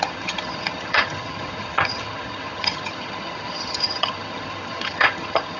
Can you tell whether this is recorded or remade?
remade